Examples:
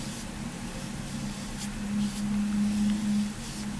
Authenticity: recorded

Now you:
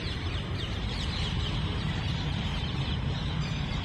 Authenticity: remade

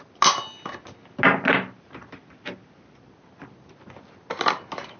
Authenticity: recorded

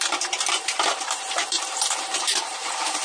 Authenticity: remade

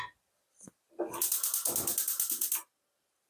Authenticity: recorded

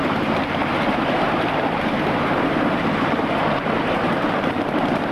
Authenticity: remade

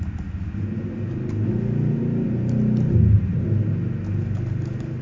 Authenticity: recorded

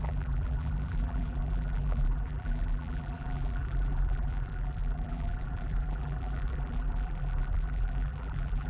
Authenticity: remade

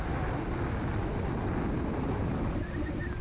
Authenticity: recorded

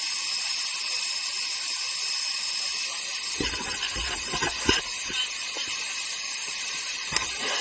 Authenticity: recorded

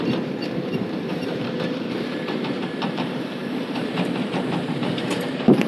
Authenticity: remade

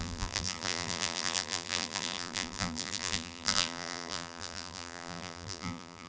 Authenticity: remade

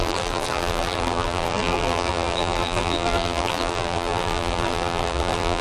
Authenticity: remade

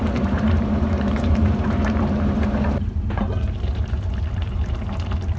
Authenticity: remade